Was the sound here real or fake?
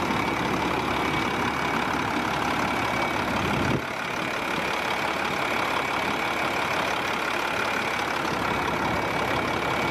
real